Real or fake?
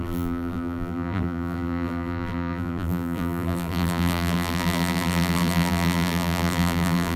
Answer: fake